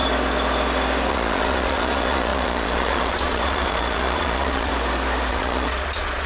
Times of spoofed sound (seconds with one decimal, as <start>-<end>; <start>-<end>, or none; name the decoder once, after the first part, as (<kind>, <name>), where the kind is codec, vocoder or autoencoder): 1.1-4.7 (vocoder, Vocos); 5.3-6.3